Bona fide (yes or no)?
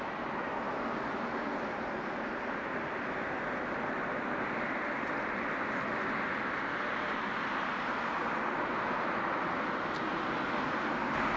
yes